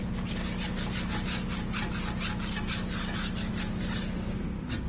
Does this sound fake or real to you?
real